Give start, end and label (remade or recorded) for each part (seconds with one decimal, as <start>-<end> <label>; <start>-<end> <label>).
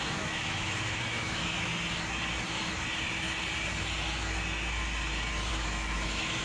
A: 0.0-1.7 remade; 1.7-5.5 recorded; 5.5-6.4 remade